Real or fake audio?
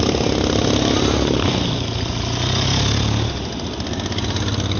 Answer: real